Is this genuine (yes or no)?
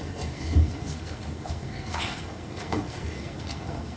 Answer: no